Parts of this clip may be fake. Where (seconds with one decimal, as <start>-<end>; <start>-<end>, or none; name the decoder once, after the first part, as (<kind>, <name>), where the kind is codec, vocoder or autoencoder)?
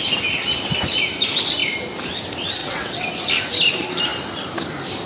2.6-3.1 (vocoder, WaveNeXt)